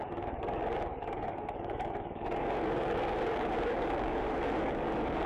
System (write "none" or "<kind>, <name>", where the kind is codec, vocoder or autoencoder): codec, DAC